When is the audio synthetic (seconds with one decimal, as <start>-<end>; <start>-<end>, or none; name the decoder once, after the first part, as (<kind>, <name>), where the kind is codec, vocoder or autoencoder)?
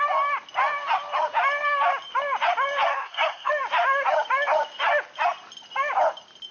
2.9-3.5 (codec, SNAC)